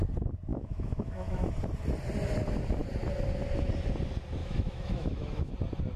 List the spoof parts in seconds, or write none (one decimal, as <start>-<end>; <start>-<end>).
0.5-1.5; 4.4-5.5